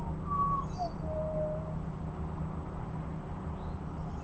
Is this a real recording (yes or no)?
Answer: yes